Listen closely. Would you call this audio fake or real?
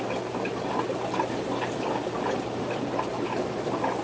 real